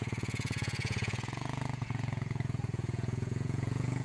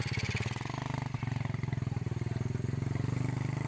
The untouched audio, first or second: second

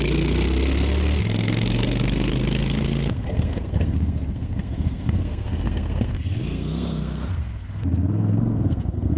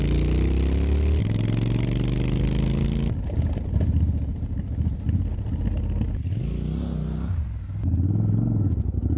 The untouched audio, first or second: second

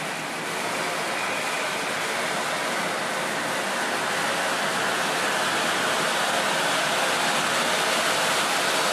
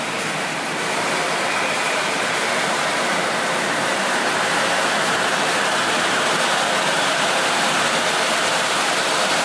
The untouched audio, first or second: first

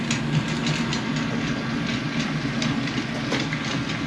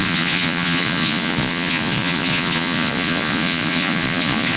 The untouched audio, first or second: first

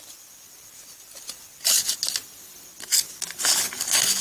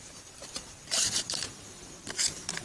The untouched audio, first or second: first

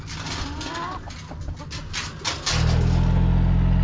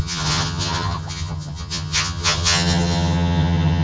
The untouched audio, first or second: first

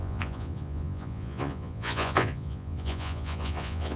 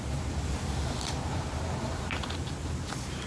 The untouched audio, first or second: second